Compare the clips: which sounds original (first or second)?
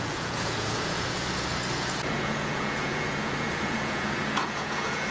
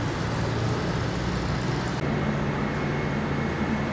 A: second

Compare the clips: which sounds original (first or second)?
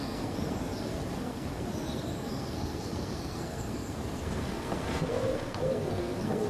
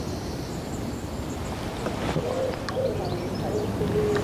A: second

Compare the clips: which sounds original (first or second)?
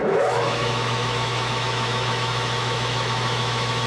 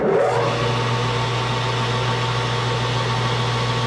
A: second